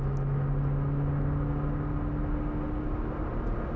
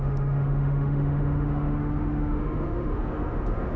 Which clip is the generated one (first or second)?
second